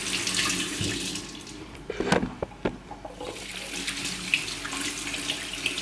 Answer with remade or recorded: recorded